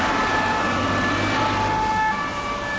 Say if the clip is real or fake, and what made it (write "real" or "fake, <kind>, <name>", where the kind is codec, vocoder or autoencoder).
real